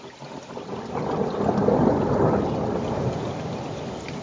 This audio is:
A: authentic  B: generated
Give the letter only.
A